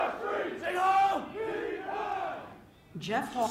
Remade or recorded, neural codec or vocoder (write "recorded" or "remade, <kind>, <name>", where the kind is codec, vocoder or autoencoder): recorded